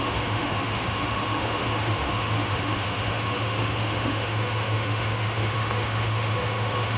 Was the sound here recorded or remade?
remade